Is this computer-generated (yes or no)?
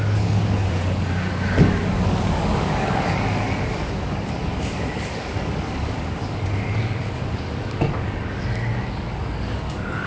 yes